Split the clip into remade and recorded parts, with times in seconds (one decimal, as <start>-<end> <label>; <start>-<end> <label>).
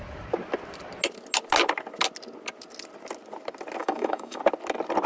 0.0-3.8 recorded; 3.8-4.4 remade; 4.4-5.1 recorded